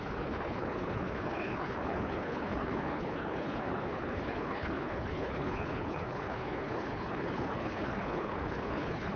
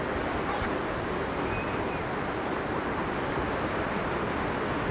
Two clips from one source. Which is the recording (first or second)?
second